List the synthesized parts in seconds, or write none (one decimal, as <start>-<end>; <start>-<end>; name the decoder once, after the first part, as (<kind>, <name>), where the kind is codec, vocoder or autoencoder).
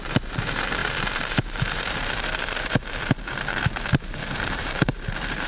0.0-5.5 (vocoder, BigVGAN v2)